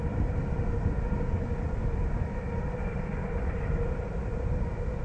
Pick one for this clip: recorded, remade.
recorded